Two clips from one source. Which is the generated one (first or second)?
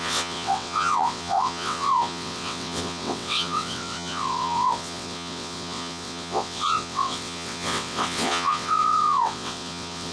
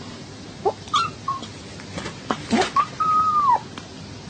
first